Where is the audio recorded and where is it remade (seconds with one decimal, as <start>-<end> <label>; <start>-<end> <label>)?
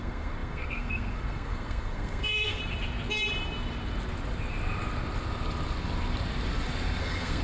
0.0-2.6 remade; 2.6-7.0 recorded; 7.0-7.4 remade